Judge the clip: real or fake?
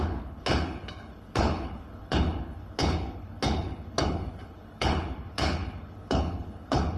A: fake